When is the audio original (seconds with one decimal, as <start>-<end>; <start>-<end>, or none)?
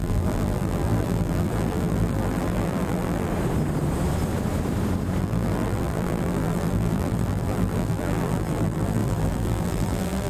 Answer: 3.3-5.2